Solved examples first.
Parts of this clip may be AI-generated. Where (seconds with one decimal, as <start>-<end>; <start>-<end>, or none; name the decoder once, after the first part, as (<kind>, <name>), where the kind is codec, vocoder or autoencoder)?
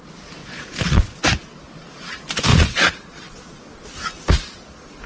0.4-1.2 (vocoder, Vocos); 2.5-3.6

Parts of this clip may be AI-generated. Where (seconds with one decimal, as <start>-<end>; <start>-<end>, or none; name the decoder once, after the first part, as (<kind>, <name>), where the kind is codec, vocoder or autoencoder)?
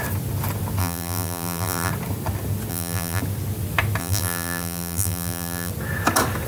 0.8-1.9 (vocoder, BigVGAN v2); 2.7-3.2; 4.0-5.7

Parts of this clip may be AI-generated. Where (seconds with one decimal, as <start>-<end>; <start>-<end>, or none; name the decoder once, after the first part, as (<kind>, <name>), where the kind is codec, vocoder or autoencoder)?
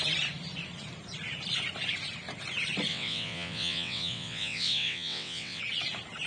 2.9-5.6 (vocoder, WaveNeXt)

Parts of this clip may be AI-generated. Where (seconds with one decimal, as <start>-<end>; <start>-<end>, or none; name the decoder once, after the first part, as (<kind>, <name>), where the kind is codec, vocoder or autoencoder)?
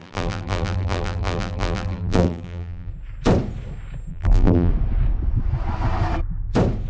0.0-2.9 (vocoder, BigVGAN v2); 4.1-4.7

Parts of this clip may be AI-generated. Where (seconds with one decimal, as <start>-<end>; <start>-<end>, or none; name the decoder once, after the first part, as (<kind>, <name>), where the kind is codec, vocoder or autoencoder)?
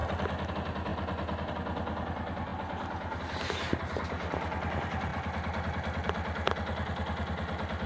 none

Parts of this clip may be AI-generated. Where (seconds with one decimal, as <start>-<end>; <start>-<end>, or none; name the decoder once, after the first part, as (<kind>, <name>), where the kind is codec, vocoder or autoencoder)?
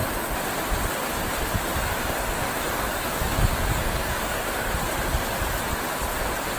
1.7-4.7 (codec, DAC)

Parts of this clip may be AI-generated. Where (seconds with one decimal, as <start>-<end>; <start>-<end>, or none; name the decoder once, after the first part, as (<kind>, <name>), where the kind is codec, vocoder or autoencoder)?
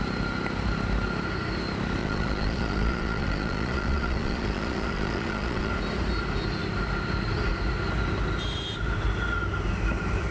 2.0-5.7 (vocoder, Vocos)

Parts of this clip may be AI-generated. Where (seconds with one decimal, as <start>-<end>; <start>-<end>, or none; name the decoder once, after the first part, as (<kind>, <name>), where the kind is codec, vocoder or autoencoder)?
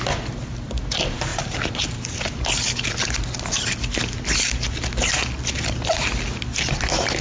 none